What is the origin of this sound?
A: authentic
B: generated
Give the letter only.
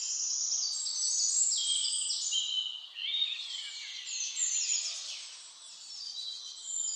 A